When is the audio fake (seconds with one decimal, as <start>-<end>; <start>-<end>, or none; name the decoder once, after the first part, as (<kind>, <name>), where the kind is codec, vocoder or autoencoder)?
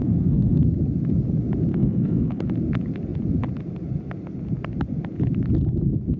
0.0-0.6 (codec, SNAC); 1.7-2.5